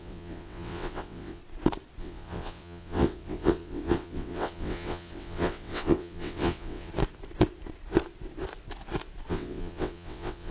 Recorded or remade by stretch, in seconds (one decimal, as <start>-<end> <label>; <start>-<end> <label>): 0.0-1.4 remade; 1.4-2.0 recorded; 2.0-6.9 remade; 6.9-9.3 recorded; 9.3-10.5 remade